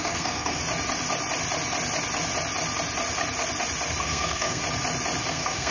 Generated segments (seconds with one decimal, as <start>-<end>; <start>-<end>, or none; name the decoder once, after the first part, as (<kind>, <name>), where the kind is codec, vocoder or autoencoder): 0.0-0.6 (codec, SNAC); 4.0-4.6; 5.3-5.7